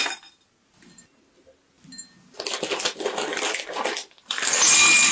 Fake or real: real